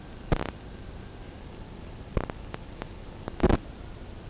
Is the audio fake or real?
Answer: real